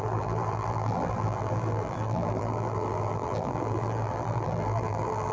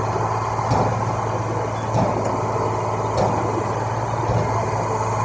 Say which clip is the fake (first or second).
first